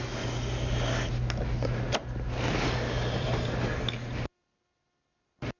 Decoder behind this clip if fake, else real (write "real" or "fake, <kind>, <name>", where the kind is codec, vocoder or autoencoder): real